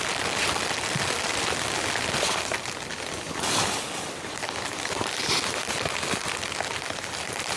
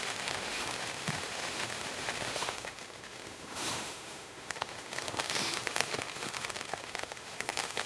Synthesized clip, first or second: second